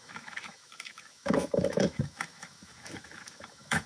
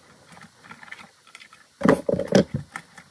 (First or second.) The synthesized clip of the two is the first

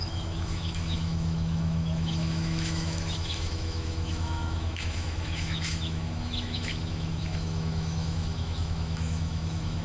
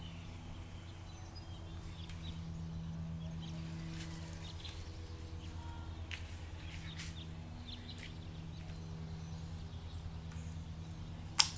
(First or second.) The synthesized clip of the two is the first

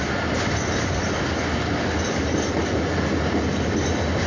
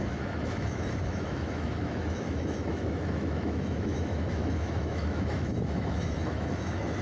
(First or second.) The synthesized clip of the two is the second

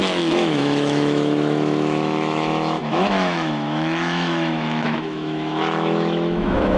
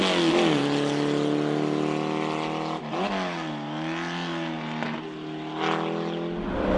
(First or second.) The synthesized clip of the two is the first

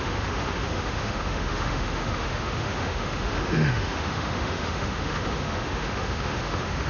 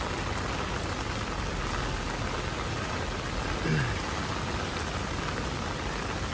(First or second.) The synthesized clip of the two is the first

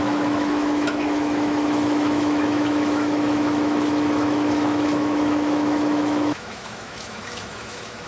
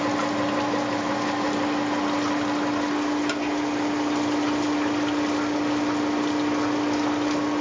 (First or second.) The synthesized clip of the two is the first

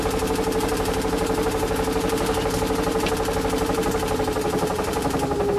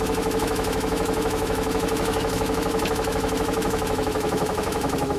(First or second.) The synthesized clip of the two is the second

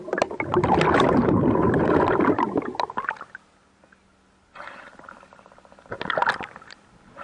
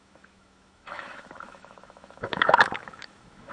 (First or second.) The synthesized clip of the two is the second